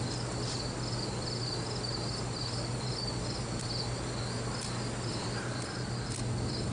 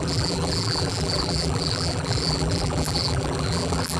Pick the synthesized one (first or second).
second